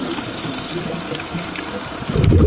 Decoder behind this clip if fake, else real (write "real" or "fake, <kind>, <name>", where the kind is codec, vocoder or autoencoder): real